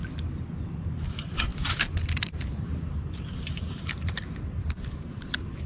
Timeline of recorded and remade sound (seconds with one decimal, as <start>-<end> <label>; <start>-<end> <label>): 0.0-1.1 recorded; 1.1-5.7 remade